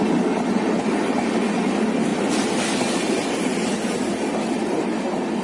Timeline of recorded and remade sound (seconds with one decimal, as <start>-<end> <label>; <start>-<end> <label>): 0.0-5.4 recorded